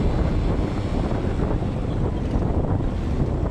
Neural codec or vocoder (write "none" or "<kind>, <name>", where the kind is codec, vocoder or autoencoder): none